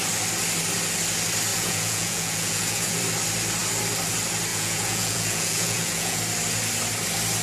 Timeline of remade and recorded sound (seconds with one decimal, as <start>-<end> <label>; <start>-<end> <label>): 0.0-1.5 recorded; 1.5-3.0 remade; 3.0-4.5 recorded; 4.5-6.2 remade; 6.2-7.4 recorded